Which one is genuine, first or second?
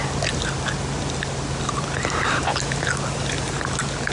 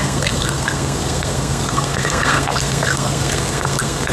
first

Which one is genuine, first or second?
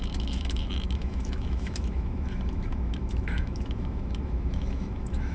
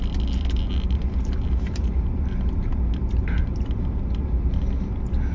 second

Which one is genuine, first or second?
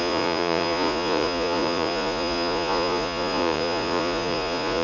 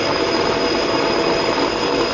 second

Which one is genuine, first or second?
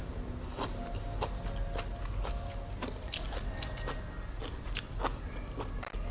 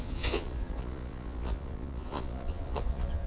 first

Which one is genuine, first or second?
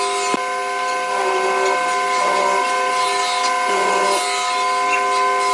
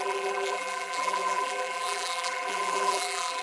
first